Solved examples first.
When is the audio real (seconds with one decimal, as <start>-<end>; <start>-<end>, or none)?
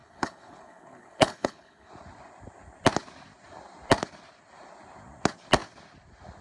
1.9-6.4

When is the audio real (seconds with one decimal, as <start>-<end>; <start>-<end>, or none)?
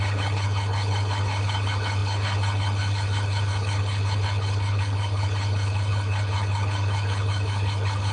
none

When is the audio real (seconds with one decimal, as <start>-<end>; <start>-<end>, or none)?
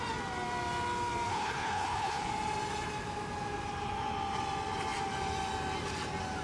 0.0-1.3; 2.3-6.4